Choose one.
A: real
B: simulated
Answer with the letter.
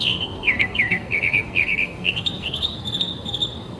B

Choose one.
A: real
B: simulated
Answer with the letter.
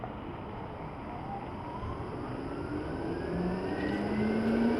A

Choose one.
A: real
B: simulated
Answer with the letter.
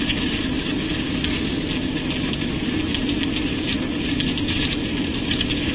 A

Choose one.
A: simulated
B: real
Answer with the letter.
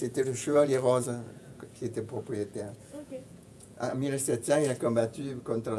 A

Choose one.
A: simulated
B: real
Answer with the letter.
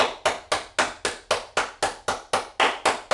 B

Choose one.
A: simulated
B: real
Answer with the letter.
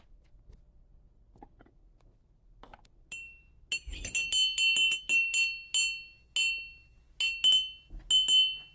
B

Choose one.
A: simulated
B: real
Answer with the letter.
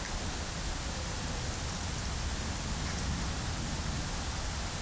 B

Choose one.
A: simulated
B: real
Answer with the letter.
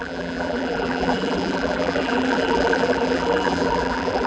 A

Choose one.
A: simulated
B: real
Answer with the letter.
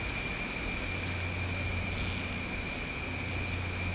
B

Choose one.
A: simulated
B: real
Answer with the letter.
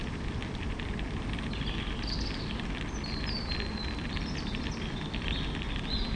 A